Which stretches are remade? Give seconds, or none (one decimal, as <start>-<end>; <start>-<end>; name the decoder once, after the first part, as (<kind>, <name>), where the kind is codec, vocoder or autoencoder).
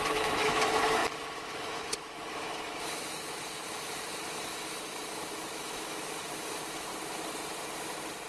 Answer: 0.0-6.9 (autoencoder, DAC-VAE)